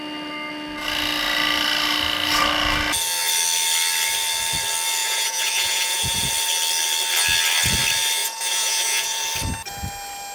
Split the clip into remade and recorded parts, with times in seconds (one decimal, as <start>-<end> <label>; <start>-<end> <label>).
0.0-5.0 recorded; 5.0-6.3 remade; 6.3-8.2 recorded; 8.2-9.2 remade; 9.2-10.3 recorded